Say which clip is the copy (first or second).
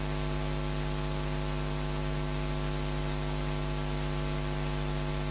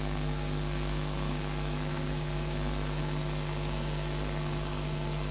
second